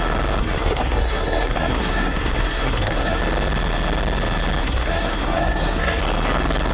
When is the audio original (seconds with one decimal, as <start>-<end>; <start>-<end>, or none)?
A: 0.0-0.4; 3.2-4.6; 6.0-6.7

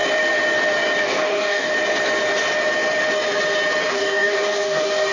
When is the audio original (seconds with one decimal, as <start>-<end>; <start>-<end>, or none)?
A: 0.0-1.0; 1.7-3.9

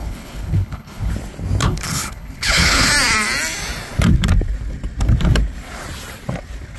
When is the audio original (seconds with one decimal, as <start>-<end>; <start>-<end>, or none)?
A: 1.1-1.6; 2.9-6.8